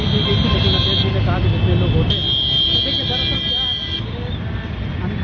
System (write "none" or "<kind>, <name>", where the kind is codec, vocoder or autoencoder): none